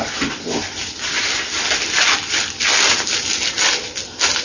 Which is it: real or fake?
real